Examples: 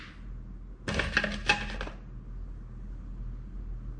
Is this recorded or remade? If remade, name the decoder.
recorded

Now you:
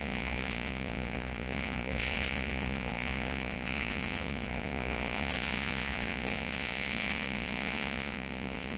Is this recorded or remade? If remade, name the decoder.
remade, vocoder, Vocos